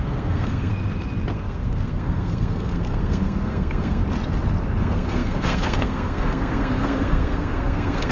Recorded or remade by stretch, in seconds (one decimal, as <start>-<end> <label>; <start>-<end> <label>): 0.0-0.7 remade; 0.7-1.3 recorded; 1.3-4.0 remade; 4.0-4.8 recorded; 4.8-8.1 remade